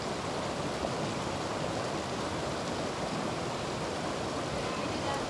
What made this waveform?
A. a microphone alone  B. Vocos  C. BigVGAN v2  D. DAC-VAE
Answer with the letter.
C